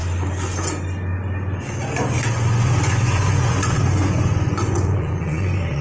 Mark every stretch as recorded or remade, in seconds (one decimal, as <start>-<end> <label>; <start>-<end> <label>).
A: 0.0-2.3 recorded; 2.3-5.8 remade